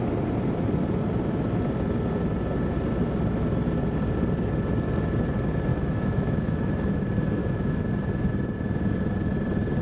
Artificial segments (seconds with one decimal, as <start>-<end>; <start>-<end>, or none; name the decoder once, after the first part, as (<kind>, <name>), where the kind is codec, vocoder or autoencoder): 5.7-7.0 (autoencoder, DAC-VAE); 7.4-7.9